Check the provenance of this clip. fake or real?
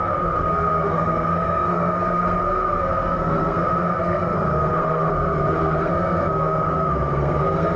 fake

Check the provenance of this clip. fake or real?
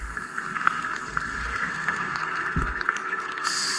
fake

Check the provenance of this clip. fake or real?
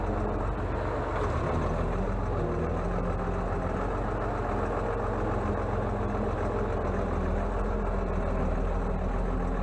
real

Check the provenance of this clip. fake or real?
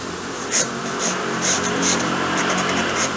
fake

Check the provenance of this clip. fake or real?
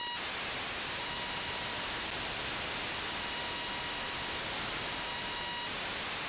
real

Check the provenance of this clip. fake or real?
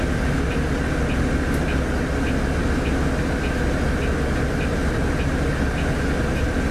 real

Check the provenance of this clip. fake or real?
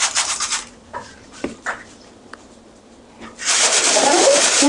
fake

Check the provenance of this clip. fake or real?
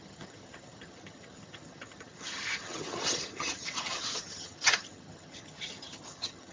fake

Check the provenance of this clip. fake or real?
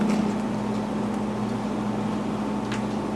real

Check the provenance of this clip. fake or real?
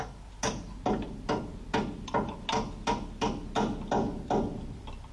real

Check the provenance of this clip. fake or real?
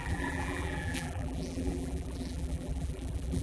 fake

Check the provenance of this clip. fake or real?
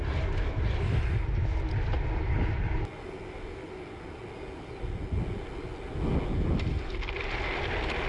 real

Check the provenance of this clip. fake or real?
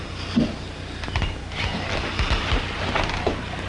real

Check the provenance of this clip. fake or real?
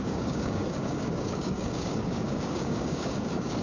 fake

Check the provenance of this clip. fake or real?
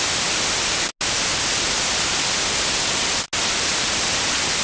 real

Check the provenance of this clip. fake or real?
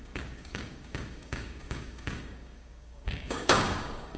fake